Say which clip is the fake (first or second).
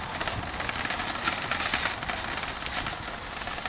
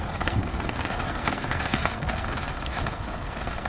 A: second